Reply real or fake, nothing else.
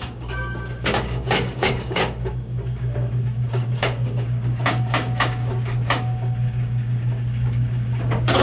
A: fake